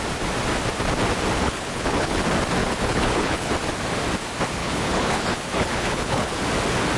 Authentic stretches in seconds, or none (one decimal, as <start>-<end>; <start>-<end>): 0.0-1.4; 2.2-2.6; 3.5-4.6; 6.4-7.0